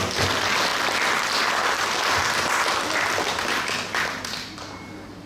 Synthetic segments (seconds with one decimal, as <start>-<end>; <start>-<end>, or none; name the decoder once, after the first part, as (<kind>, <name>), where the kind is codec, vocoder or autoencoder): none